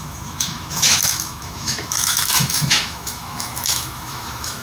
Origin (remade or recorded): remade